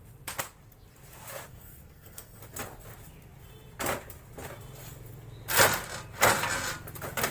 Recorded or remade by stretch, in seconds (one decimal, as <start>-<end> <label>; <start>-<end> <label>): 0.0-1.5 recorded; 1.5-2.4 remade; 2.4-7.3 recorded